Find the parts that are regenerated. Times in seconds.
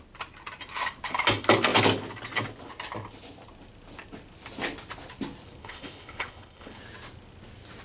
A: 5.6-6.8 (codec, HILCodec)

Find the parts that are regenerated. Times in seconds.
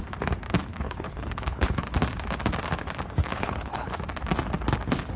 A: 0.7-2.0 (codec, HILCodec); 3.2-3.9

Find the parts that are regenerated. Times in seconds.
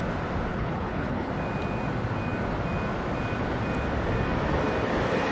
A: 0.5-1.3 (codec, HILCodec)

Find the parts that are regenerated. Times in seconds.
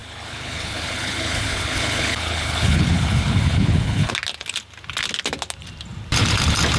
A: 0.0-4.1 (codec, HILCodec)